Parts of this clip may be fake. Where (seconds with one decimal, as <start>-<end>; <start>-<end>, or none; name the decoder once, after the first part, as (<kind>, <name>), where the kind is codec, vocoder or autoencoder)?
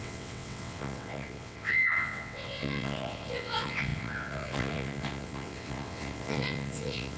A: 0.0-7.2 (vocoder, WaveNeXt)